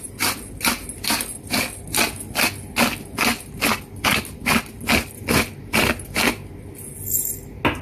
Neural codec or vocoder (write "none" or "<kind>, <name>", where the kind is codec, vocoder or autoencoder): none